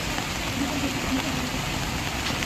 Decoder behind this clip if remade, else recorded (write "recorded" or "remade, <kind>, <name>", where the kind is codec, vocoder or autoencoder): recorded